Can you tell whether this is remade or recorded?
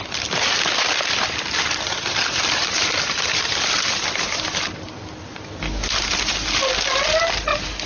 recorded